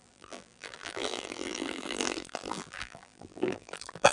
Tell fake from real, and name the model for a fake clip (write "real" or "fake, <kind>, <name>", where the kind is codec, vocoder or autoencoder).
fake, vocoder, BigVGAN v2